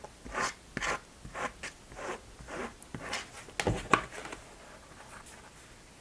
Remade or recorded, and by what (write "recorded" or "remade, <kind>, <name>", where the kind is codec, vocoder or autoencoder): recorded